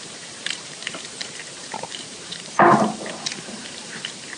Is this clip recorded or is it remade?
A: remade